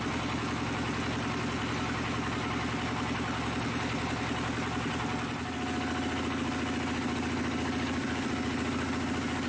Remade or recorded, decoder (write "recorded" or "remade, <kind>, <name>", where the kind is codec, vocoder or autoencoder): recorded